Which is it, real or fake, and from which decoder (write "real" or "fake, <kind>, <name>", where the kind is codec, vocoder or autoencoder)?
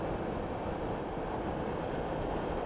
fake, vocoder, BigVGAN v2